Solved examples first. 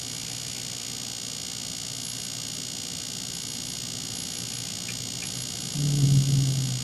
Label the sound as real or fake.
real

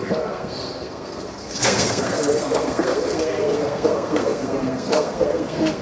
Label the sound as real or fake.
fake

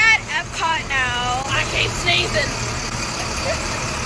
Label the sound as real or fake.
fake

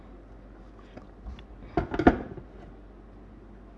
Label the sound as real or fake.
real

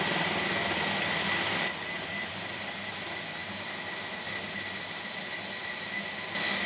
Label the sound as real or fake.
real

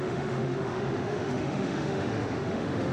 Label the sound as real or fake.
fake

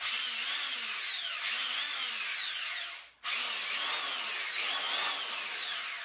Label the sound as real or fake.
real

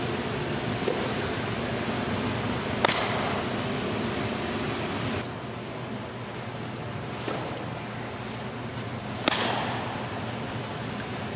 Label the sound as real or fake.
real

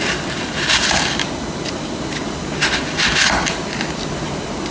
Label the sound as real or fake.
real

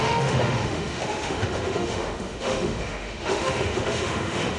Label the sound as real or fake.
fake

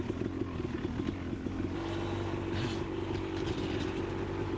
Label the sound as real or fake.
real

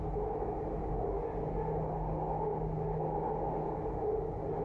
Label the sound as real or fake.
real